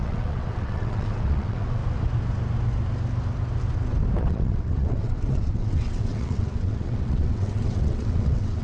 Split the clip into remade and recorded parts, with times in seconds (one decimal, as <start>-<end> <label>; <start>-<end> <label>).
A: 0.0-1.8 remade; 1.8-4.2 recorded; 4.2-8.6 remade